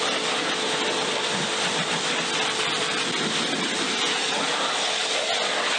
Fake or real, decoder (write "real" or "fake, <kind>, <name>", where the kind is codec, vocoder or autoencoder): real